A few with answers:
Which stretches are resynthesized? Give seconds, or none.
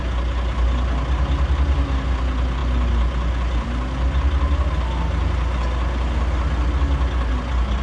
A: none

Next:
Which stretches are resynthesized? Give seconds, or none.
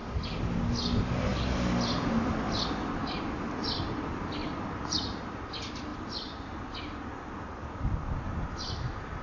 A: 4.4-5.2 (vocoder, BigVGAN v2)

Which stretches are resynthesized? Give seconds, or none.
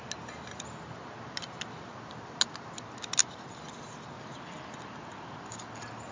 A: none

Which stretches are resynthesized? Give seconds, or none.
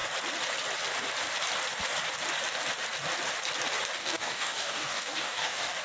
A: 4.0-5.8 (codec, DAC)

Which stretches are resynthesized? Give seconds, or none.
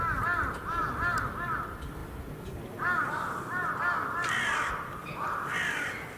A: none